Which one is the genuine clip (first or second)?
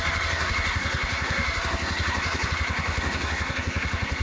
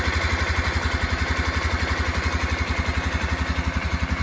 second